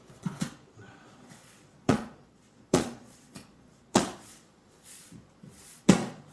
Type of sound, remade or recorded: remade